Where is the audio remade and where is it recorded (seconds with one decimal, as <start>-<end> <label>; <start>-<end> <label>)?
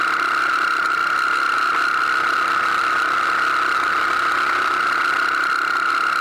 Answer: 0.0-6.2 recorded